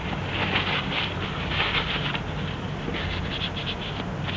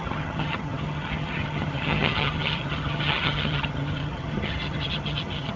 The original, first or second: first